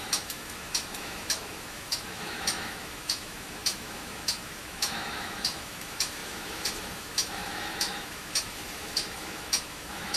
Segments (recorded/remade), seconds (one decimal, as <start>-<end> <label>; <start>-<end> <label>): 0.0-10.2 remade